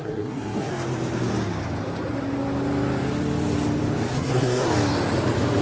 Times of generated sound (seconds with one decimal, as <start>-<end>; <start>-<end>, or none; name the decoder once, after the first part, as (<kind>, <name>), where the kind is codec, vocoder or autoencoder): 0.0-0.7 (codec, SNAC); 4.1-4.7